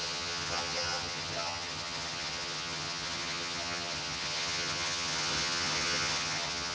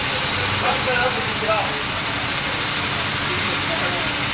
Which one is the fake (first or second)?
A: first